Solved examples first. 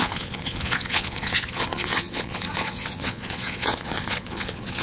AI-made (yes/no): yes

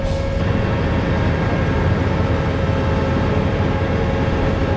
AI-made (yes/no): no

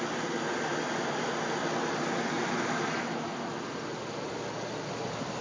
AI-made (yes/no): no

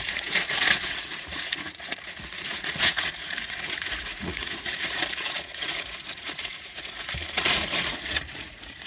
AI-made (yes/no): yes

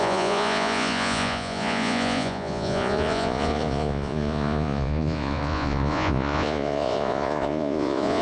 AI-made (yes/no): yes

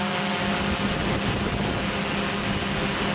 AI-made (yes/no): no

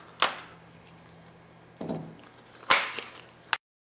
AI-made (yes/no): no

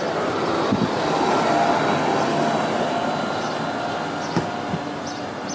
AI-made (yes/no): no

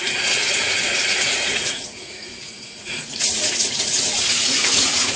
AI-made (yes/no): yes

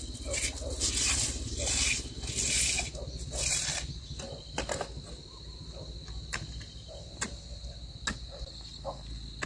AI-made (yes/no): no